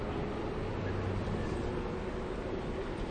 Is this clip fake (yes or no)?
no